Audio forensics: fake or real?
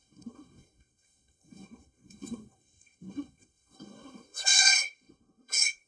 fake